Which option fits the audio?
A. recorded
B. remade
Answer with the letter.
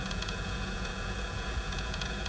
B